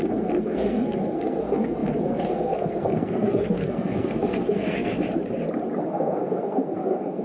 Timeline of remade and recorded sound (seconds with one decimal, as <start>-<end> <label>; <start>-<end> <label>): 0.0-4.9 remade; 4.9-5.8 recorded; 5.8-7.2 remade